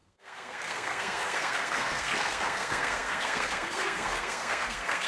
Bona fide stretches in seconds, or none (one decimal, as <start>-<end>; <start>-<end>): none